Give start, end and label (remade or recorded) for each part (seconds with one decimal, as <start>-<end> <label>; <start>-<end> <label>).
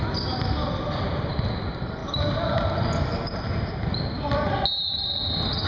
0.0-5.7 recorded